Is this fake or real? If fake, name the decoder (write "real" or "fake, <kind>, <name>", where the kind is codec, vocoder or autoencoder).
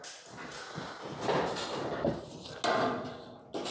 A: real